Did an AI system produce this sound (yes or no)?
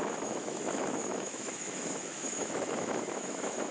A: yes